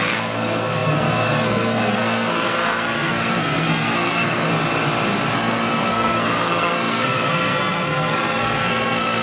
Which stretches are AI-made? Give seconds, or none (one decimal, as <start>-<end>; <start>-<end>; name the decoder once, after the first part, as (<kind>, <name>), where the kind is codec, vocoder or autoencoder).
0.0-4.5 (codec, SNAC); 5.3-9.2